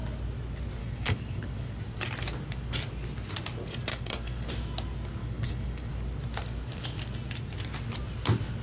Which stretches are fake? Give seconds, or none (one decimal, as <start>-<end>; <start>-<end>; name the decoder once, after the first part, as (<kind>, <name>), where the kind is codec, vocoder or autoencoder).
0.8-1.8 (codec, DAC); 3.9-4.5; 5.2-5.9